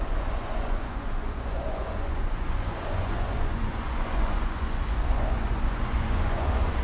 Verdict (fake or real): fake